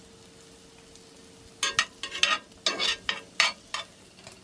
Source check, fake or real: real